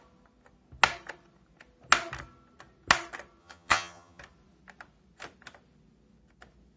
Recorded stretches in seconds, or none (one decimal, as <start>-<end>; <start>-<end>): 0.0-3.4; 4.2-6.8